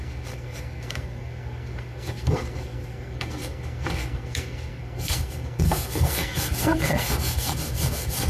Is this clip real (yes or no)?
no